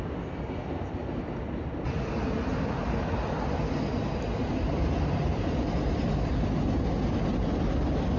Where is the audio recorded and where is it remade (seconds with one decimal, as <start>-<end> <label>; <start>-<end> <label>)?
0.0-8.2 recorded